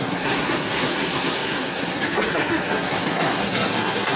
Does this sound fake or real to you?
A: fake